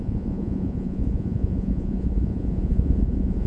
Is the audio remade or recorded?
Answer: remade